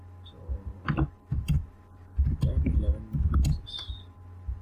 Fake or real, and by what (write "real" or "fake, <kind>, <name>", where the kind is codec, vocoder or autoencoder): real